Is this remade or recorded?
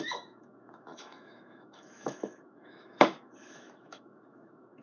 remade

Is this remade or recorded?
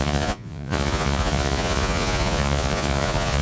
remade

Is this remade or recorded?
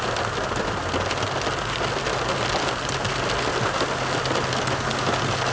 recorded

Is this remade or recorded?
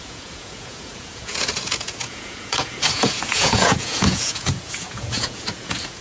remade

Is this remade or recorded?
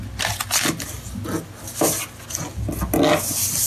recorded